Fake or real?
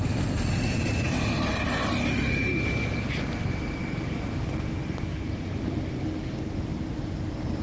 real